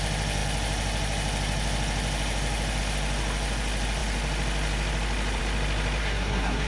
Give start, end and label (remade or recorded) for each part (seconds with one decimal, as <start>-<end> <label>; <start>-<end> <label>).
0.0-6.0 recorded; 6.0-6.7 remade